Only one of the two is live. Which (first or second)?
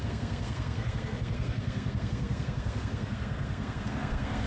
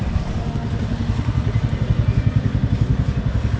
second